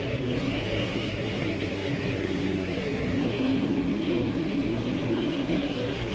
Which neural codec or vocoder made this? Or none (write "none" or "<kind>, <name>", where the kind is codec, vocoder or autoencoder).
codec, SNAC